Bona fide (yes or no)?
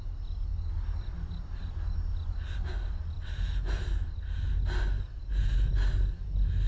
yes